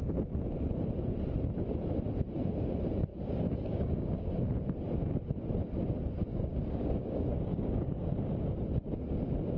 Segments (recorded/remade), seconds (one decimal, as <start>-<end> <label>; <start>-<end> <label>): 0.0-3.1 recorded; 3.1-4.3 remade; 4.3-6.3 recorded; 6.3-8.1 remade; 8.1-9.6 recorded